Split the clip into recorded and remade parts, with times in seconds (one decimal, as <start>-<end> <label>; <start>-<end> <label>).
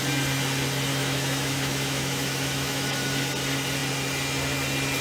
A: 0.0-0.9 recorded; 0.9-3.0 remade; 3.0-5.0 recorded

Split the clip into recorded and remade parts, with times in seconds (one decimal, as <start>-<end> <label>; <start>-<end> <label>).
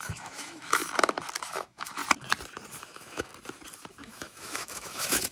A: 0.0-0.8 remade; 0.8-1.4 recorded; 1.4-2.0 remade; 2.0-2.8 recorded; 2.8-3.3 remade; 3.3-3.9 recorded; 3.9-5.3 remade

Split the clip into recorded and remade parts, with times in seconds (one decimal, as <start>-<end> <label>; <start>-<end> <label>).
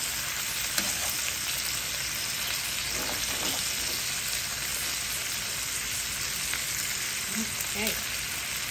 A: 0.0-8.7 recorded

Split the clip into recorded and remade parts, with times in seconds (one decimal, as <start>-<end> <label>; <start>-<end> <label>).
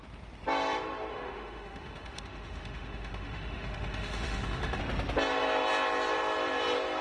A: 0.0-1.1 recorded; 1.1-4.8 remade; 4.8-7.0 recorded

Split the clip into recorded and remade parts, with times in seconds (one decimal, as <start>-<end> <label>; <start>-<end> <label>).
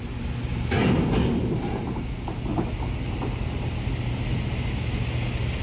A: 0.0-5.6 recorded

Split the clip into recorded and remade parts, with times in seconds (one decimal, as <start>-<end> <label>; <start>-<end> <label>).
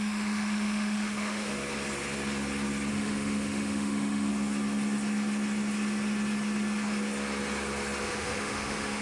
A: 0.0-1.5 remade; 1.5-2.9 recorded; 2.9-4.3 remade; 4.3-8.0 recorded; 8.0-9.0 remade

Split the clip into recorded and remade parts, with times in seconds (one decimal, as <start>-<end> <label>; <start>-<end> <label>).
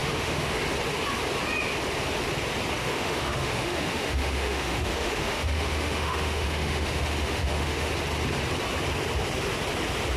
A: 0.0-0.6 remade; 0.6-2.8 recorded; 2.8-7.9 remade; 7.9-10.2 recorded